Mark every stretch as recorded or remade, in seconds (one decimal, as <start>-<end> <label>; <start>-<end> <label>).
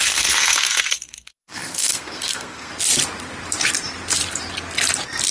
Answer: 0.0-2.7 remade; 2.7-5.3 recorded